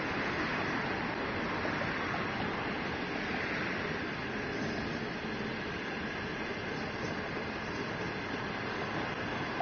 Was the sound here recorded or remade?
recorded